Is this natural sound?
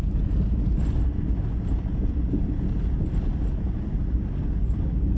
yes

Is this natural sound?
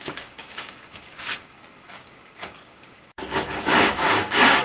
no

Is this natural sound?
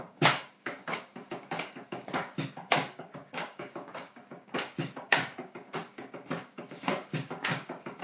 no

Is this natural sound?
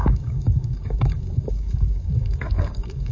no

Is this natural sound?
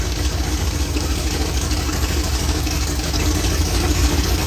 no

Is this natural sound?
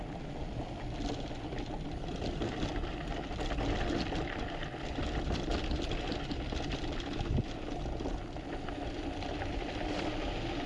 yes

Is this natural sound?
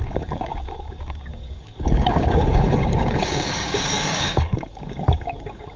no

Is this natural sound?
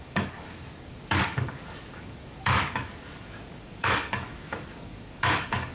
no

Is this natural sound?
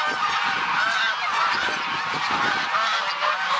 yes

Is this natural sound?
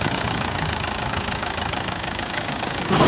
no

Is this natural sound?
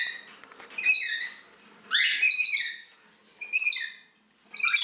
yes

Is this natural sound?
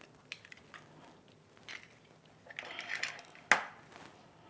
yes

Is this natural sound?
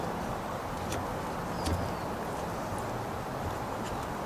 yes